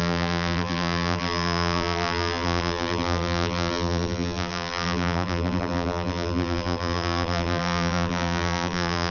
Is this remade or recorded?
remade